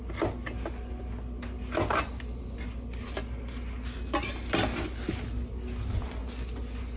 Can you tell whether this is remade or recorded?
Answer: recorded